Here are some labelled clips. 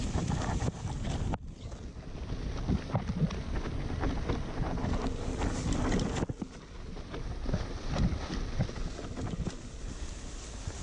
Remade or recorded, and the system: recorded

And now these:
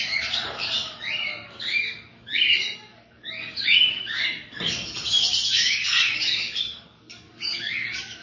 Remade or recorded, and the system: remade, codec, DAC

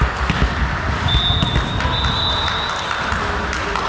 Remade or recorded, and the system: recorded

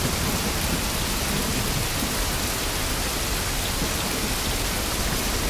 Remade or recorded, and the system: recorded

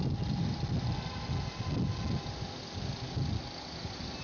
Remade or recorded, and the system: recorded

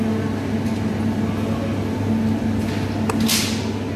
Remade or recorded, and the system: recorded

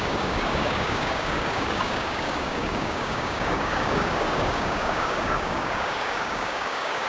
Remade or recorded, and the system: remade, codec, DAC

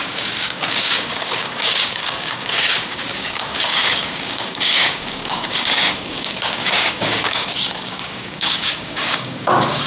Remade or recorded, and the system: remade, codec, DAC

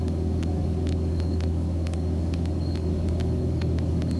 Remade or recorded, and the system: remade, codec, DAC